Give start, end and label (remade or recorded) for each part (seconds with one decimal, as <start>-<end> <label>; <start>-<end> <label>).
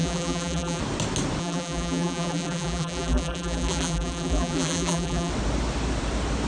0.0-0.8 remade; 0.8-1.4 recorded; 1.4-5.3 remade; 5.3-6.5 recorded